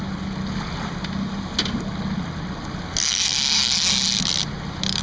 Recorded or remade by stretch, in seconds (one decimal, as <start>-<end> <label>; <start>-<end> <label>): 0.0-5.0 recorded